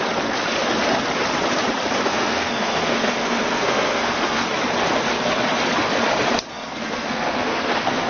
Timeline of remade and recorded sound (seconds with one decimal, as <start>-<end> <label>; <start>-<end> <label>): 0.0-2.1 recorded; 2.1-4.5 remade; 4.5-6.5 recorded; 6.5-8.1 remade

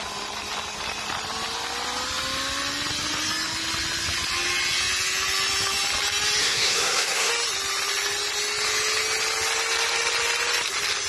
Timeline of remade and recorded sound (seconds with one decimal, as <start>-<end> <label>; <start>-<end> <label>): 0.0-6.4 recorded; 6.4-7.3 remade; 7.3-11.1 recorded

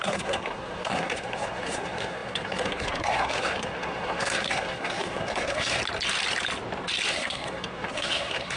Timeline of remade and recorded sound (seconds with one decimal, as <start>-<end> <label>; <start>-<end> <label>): 0.0-5.8 remade; 5.8-7.1 recorded; 7.1-8.6 remade